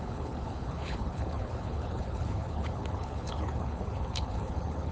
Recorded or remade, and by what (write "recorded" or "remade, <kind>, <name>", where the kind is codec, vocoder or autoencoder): remade, codec, HILCodec